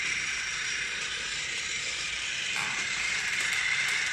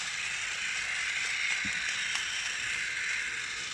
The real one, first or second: second